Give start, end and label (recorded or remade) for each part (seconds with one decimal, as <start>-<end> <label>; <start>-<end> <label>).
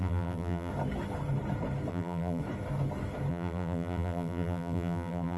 0.0-0.7 remade; 0.7-1.9 recorded; 1.9-2.4 remade; 2.4-3.3 recorded; 3.3-5.4 remade